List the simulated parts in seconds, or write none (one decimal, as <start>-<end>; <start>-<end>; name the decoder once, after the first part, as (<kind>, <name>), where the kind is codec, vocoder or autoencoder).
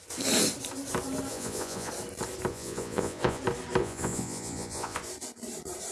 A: 1.3-1.9 (vocoder, Vocos); 2.5-3.4; 3.8-5.0